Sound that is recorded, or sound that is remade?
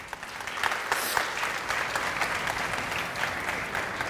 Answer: recorded